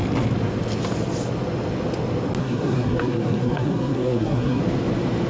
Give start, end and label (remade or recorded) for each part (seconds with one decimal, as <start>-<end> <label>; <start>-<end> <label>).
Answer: 0.0-2.4 recorded; 2.4-4.6 remade; 4.6-5.3 recorded